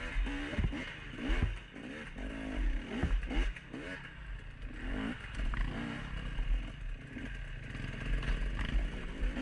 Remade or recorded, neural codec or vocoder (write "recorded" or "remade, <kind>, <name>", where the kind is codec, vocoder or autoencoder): recorded